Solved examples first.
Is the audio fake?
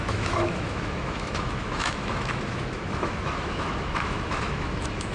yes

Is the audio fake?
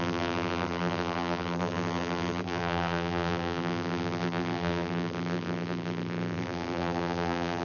yes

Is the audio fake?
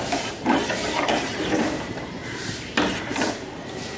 yes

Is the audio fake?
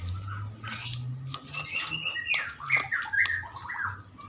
no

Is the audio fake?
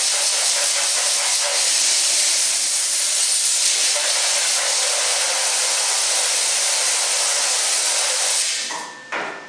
no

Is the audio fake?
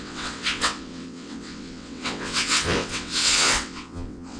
yes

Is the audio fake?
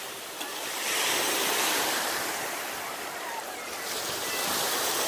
yes